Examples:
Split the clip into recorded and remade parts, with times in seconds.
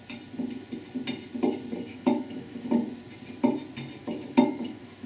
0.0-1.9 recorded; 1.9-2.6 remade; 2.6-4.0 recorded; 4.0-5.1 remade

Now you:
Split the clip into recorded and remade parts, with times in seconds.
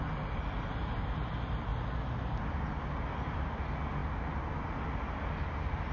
0.0-5.9 recorded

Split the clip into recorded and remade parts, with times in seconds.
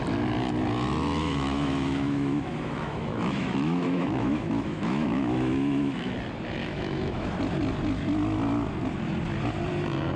0.0-1.2 recorded; 1.2-6.1 remade; 6.1-6.6 recorded; 6.6-7.3 remade; 7.3-10.2 recorded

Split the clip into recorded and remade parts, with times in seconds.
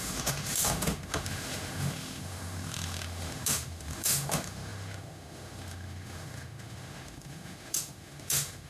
0.0-8.7 remade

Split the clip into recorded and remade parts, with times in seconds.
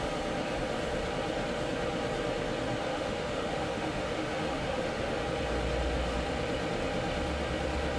0.0-2.9 recorded; 2.9-5.2 remade; 5.2-8.0 recorded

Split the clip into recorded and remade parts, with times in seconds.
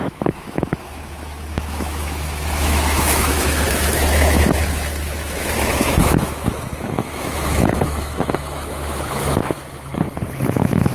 0.0-9.9 remade; 9.9-10.5 recorded; 10.5-10.9 remade